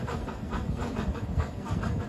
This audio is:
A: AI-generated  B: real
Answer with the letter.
A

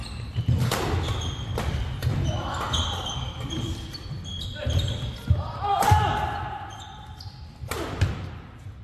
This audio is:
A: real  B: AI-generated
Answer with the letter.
A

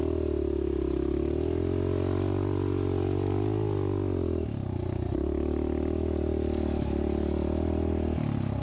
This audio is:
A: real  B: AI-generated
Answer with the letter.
A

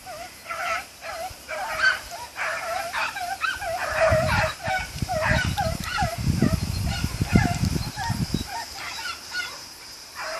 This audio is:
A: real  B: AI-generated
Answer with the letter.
B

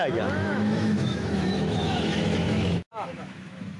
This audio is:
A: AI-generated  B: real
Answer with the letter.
A